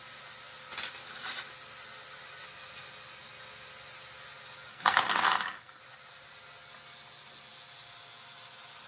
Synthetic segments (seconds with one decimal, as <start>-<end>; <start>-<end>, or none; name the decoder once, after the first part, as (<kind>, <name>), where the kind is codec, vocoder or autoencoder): 4.7-5.8 (codec, SNAC)